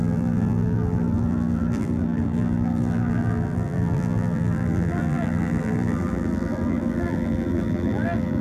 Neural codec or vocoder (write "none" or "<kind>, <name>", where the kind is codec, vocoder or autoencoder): vocoder, BigVGAN v2